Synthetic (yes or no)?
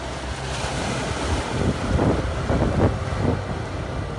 no